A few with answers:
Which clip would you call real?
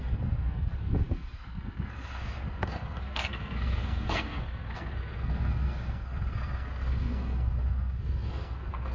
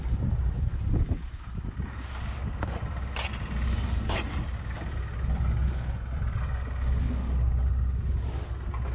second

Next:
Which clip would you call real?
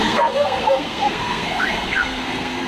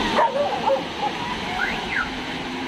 second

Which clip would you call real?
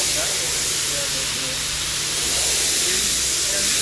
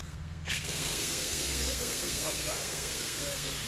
first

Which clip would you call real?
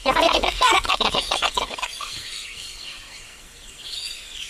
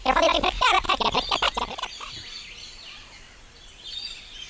second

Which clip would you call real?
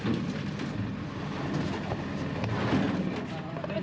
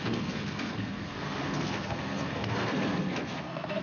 first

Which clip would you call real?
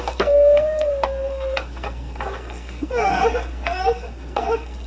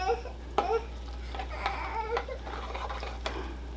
second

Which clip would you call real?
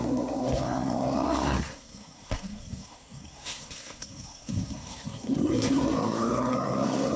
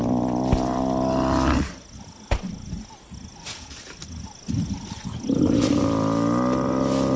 second